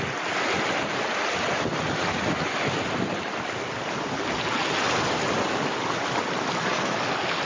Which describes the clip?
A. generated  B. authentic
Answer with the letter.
B